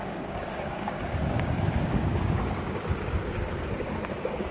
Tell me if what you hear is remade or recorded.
remade